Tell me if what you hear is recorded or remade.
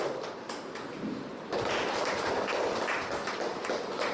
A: recorded